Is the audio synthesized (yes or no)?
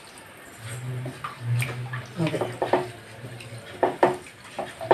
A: no